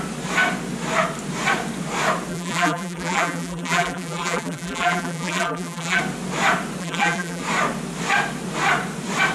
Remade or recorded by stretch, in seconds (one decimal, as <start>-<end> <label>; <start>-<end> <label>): 0.0-2.3 recorded; 2.3-6.0 remade; 6.0-6.8 recorded; 6.8-7.4 remade; 7.4-9.3 recorded